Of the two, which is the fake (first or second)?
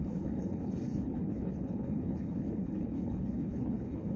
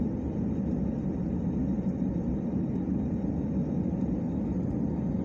first